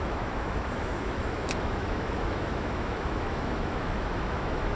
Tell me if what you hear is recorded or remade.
remade